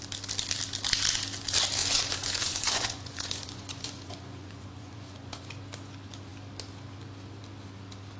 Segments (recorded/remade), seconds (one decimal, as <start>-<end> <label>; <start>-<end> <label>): 0.0-1.8 recorded; 1.8-5.5 remade; 5.5-8.2 recorded

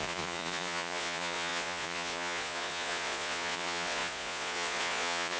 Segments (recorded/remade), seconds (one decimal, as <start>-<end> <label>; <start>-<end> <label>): 0.0-5.4 remade

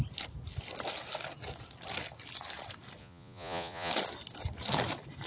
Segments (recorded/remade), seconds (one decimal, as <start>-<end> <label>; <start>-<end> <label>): 0.0-3.0 recorded; 3.0-3.9 remade; 3.9-5.3 recorded

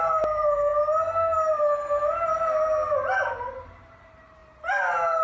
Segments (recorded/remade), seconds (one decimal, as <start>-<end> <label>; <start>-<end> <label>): 0.0-5.2 recorded

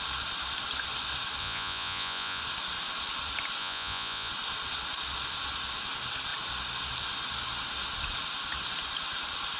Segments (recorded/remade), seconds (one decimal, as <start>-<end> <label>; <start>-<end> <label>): 0.0-1.4 recorded; 1.4-2.4 remade; 2.4-3.6 recorded; 3.6-4.3 remade; 4.3-9.6 recorded

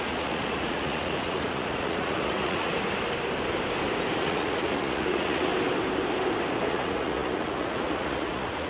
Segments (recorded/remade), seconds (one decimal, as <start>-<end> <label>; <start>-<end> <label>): 0.0-2.7 remade; 2.7-4.2 recorded; 4.2-5.5 remade; 5.5-6.6 recorded; 6.6-8.7 remade

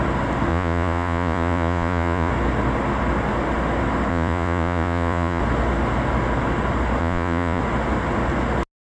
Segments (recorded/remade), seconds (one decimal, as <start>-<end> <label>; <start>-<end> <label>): 0.0-0.5 recorded; 0.5-2.3 remade; 2.3-4.1 recorded; 4.1-5.4 remade; 5.4-7.0 recorded; 7.0-7.6 remade; 7.6-8.9 recorded